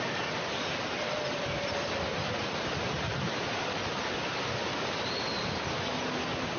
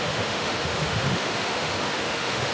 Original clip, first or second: first